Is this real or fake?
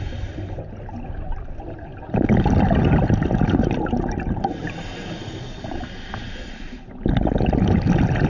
real